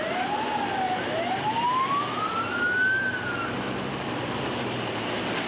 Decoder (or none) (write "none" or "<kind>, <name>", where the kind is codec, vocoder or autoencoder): none